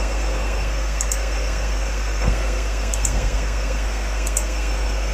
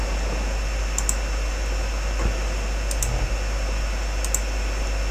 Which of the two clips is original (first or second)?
second